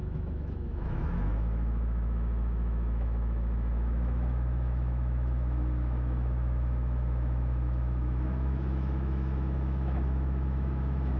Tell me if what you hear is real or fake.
fake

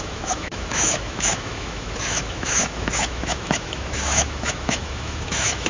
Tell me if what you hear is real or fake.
fake